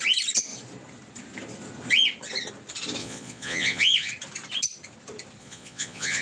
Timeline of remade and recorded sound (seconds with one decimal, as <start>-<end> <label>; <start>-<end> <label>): 0.0-3.0 recorded; 3.0-4.1 remade; 4.1-5.4 recorded; 5.4-6.2 remade